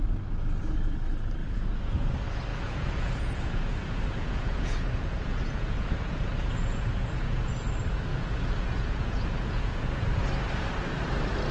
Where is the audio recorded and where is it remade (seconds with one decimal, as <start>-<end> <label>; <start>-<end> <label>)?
0.0-1.4 recorded; 1.4-2.1 remade; 2.1-2.5 recorded; 2.5-7.5 remade; 7.5-8.1 recorded; 8.1-10.2 remade; 10.2-11.5 recorded